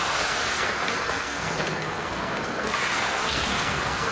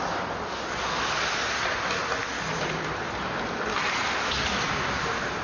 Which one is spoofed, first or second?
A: first